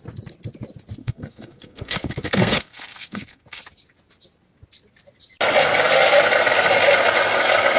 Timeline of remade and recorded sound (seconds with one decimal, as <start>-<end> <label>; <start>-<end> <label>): 0.0-1.0 recorded; 1.0-3.6 remade; 3.6-7.8 recorded